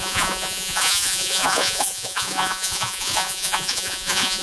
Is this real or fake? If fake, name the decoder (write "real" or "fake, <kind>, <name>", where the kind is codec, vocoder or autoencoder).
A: fake, vocoder, Vocos